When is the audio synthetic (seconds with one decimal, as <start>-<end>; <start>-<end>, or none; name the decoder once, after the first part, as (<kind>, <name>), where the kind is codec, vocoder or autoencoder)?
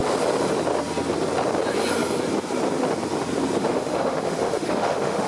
3.6-5.3 (autoencoder, DAC-VAE)